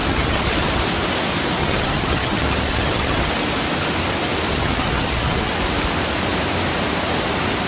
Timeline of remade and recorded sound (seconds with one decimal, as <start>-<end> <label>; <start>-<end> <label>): 0.0-0.7 remade; 0.7-1.6 recorded; 1.6-3.3 remade; 3.3-4.5 recorded; 4.5-5.5 remade; 5.5-7.7 recorded